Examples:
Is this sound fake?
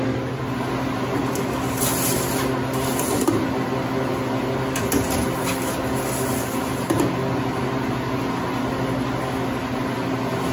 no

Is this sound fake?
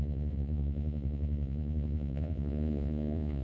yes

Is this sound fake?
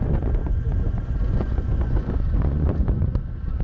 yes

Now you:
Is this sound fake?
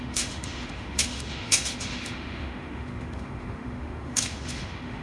yes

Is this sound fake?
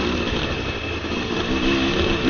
no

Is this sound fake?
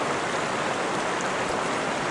no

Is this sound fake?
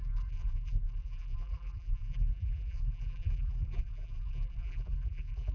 yes